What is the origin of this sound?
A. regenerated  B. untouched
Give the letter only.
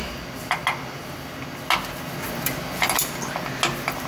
B